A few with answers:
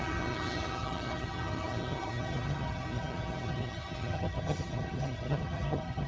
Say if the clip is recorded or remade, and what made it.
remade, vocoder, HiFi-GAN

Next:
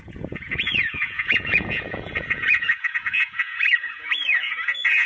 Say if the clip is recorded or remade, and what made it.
remade, vocoder, Vocos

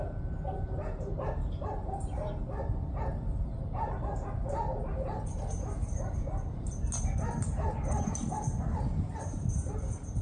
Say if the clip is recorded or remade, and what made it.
recorded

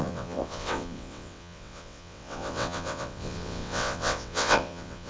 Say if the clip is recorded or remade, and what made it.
remade, vocoder, WaveNeXt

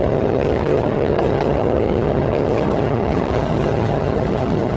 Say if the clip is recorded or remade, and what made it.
remade, vocoder, HiFi-GAN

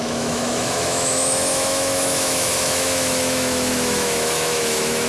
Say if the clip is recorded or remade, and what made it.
remade, autoencoder, DAC-VAE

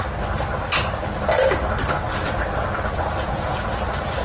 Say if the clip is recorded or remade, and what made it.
recorded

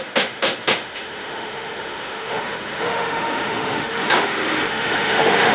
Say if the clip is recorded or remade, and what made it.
remade, autoencoder, DAC-VAE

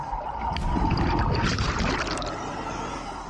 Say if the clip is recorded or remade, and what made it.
recorded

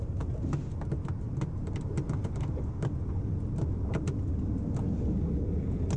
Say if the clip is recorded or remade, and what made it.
recorded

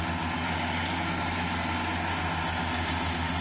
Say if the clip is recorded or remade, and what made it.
recorded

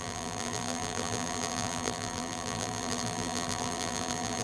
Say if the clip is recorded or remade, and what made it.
remade, vocoder, BigVGAN v2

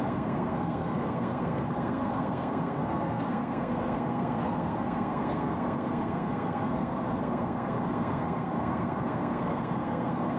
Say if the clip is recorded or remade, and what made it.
remade, codec, SNAC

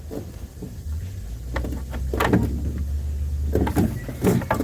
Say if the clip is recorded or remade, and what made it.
recorded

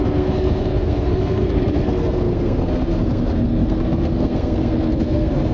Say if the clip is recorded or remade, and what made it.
remade, codec, SNAC